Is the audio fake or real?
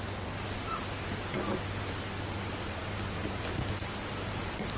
real